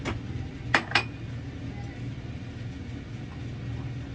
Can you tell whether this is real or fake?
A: real